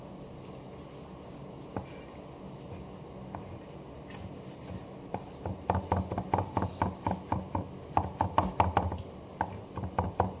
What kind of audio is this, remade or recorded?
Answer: recorded